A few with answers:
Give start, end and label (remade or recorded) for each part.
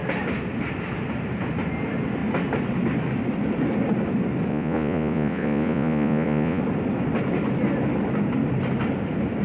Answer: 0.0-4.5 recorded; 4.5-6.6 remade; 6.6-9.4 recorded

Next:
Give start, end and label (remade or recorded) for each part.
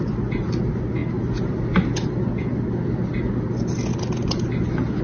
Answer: 0.0-5.0 recorded